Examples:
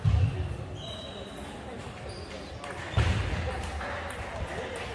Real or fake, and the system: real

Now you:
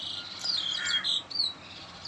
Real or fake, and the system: real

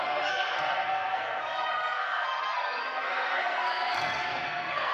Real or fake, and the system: fake, codec, SNAC